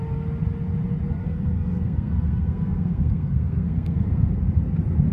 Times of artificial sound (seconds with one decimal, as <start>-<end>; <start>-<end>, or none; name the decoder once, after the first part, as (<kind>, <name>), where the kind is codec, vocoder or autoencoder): 1.2-4.3 (codec, SNAC)